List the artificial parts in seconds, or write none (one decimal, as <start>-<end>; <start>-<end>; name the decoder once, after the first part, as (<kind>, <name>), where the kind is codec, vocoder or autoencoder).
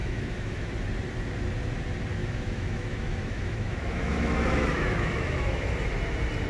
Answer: 0.0-0.7 (autoencoder, DAC-VAE); 2.2-5.7